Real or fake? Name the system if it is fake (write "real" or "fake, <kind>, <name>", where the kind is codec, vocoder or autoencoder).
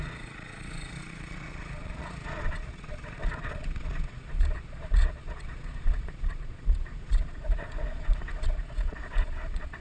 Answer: fake, vocoder, Vocos